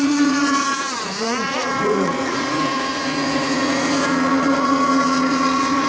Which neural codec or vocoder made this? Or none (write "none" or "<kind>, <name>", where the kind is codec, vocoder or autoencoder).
vocoder, Vocos